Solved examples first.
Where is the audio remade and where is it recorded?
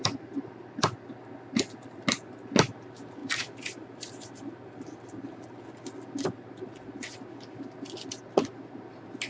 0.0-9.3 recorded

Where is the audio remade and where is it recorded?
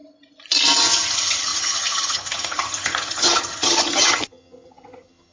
0.0-0.8 recorded; 0.8-5.3 remade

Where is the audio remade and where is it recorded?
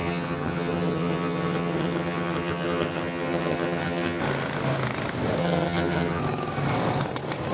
0.0-4.2 remade; 4.2-5.4 recorded; 5.4-6.2 remade; 6.2-7.5 recorded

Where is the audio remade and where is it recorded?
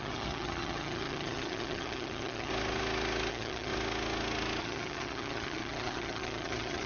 0.0-2.5 remade; 2.5-3.3 recorded; 3.3-3.7 remade; 3.7-4.6 recorded; 4.6-6.9 remade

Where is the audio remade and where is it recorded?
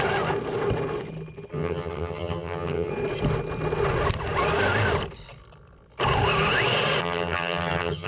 0.0-1.5 recorded; 1.5-2.9 remade; 2.9-7.0 recorded; 7.0-8.1 remade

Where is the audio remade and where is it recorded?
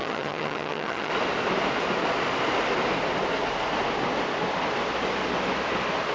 0.0-1.1 remade; 1.1-6.1 recorded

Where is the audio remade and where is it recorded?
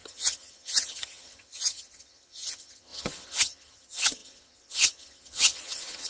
0.0-6.1 remade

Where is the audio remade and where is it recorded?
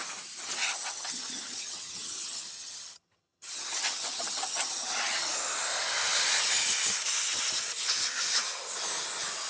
0.0-0.6 recorded; 0.6-5.3 remade; 5.3-9.5 recorded